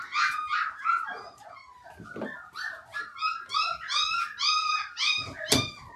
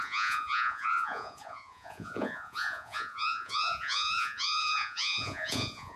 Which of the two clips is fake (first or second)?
second